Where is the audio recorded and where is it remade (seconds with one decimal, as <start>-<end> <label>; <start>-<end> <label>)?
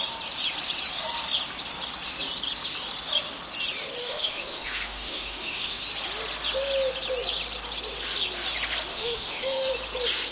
0.0-4.0 recorded; 4.0-5.8 remade; 5.8-8.9 recorded; 8.9-9.7 remade; 9.7-10.3 recorded